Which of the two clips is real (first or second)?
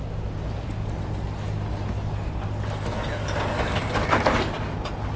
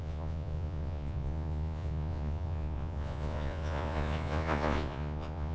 first